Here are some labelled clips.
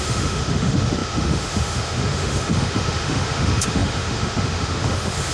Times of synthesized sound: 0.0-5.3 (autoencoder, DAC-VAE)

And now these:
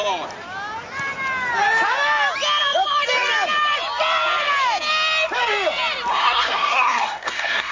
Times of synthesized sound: 6.1-7.7 (codec, SNAC)

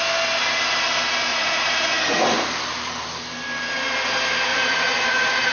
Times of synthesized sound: 1.3-2.4 (vocoder, Vocos); 4.5-5.5